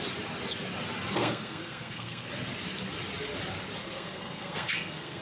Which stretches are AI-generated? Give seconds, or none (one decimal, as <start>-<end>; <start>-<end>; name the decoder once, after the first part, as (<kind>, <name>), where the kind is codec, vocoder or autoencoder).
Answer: 1.2-2.3 (codec, SNAC); 3.8-5.2

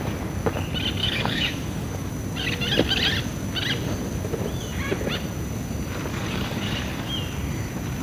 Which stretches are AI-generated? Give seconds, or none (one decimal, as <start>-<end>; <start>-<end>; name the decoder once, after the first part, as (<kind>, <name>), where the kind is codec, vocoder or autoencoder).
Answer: 1.0-2.1 (codec, DAC); 6.1-7.1

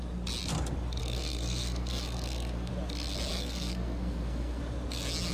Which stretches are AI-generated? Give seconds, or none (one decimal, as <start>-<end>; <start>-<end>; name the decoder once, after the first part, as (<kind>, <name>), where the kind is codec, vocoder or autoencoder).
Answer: 1.0-2.7 (codec, SNAC); 3.3-4.6